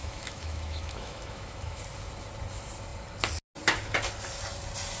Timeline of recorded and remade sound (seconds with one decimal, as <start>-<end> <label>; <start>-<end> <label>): 0.0-1.8 remade; 1.8-5.0 recorded